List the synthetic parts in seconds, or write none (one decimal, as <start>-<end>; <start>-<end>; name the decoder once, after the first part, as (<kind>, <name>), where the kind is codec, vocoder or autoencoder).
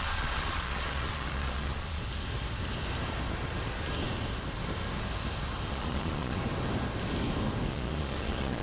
0.0-2.0 (vocoder, Vocos); 5.7-6.4; 7.7-8.6